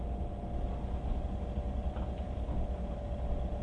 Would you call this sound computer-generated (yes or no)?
no